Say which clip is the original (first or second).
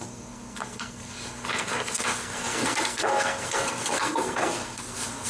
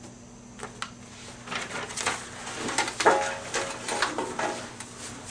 second